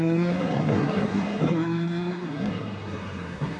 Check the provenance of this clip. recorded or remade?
remade